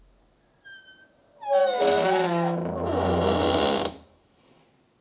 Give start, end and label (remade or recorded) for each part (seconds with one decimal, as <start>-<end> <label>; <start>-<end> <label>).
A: 0.0-1.6 recorded; 1.6-4.6 remade; 4.6-5.0 recorded